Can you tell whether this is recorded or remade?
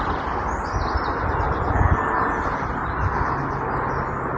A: recorded